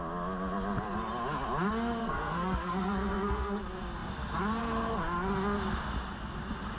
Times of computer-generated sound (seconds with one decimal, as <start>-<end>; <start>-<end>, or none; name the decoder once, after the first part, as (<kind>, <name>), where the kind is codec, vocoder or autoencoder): 2.0-3.6 (codec, SNAC)